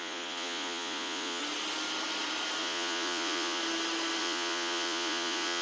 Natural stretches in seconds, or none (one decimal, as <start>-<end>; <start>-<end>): 1.4-2.6; 3.6-4.2